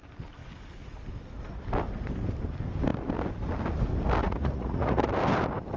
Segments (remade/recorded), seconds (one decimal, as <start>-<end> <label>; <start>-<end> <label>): 0.0-4.2 recorded; 4.2-5.1 remade; 5.1-5.8 recorded